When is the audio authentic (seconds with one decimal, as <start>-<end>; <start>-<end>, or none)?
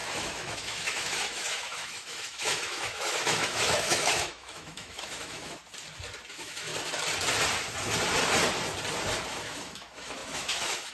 5.6-6.3; 6.7-9.3